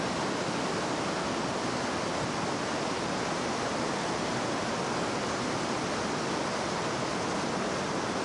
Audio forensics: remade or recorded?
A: recorded